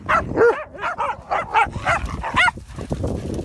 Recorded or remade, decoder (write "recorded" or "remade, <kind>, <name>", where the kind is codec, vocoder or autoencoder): recorded